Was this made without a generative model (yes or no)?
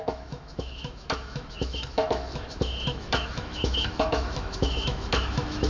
no